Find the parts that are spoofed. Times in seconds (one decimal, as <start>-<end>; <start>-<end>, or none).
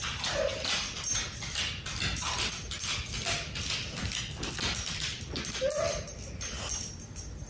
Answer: none